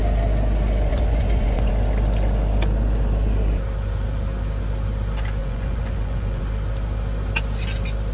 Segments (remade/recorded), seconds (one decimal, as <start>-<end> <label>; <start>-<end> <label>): 0.0-0.9 recorded; 0.9-1.7 remade; 1.7-5.4 recorded; 5.4-6.4 remade; 6.4-8.1 recorded